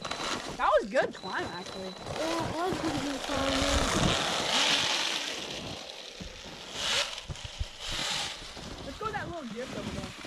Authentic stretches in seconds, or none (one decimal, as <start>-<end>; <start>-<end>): 3.4-7.3